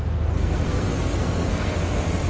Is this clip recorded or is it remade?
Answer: remade